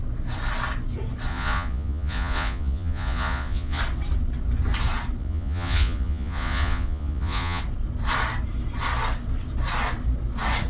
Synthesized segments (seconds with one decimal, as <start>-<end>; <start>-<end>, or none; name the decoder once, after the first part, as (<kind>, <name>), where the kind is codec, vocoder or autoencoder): 1.3-3.8 (vocoder, Vocos); 5.2-7.6